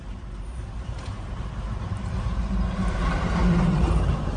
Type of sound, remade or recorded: remade